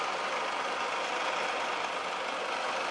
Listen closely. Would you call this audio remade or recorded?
recorded